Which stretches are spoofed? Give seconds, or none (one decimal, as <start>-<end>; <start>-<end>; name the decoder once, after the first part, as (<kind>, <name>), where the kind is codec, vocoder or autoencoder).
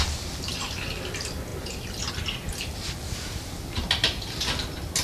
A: none